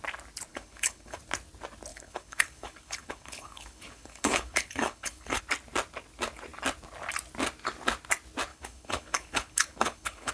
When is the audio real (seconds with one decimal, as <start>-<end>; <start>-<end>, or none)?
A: 0.0-0.5; 1.2-1.9; 5.4-8.5

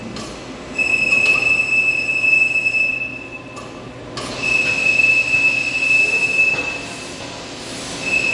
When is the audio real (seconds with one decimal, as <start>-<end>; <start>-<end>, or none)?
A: 0.0-8.3

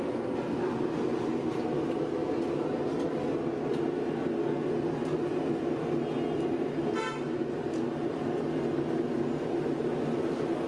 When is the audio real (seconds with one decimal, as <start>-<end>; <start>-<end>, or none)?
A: 0.0-10.7